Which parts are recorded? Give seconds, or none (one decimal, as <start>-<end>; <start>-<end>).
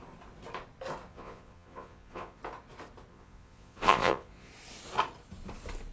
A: 0.0-1.1; 2.4-3.1; 4.5-5.9